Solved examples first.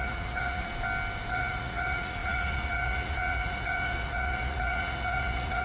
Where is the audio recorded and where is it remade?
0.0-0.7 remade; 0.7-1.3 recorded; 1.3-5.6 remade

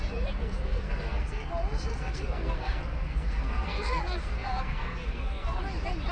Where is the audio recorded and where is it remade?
0.0-0.4 recorded; 0.4-1.5 remade; 1.5-1.9 recorded; 1.9-5.6 remade; 5.6-6.1 recorded

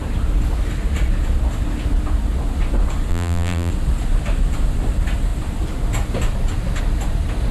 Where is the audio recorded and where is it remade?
0.0-3.1 recorded; 3.1-3.7 remade; 3.7-7.5 recorded

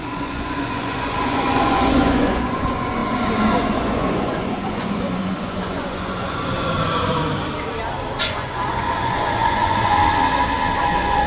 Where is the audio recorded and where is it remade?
0.0-7.3 remade; 7.3-8.2 recorded; 8.2-10.0 remade; 10.0-10.8 recorded; 10.8-11.3 remade

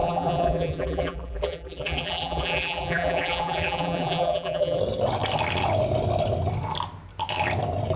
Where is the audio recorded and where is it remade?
0.0-4.8 remade; 4.8-8.0 recorded